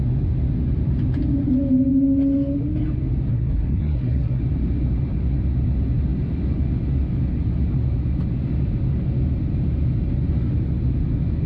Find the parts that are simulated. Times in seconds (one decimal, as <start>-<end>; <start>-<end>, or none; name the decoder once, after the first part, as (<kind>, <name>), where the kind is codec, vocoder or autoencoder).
3.3-4.4 (codec, SNAC)